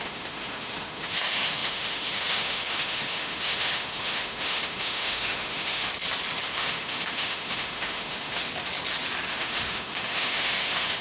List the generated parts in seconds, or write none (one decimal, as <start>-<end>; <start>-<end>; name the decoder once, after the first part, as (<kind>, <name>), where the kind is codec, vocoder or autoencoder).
0.0-5.9 (autoencoder, DAC-VAE); 6.5-8.5; 9.3-11.0